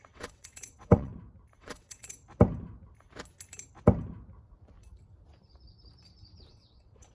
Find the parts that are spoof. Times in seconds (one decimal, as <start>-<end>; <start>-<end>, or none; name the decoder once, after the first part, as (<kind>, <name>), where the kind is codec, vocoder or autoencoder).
0.0-1.1 (vocoder, WaveNeXt); 1.6-2.2; 6.5-7.1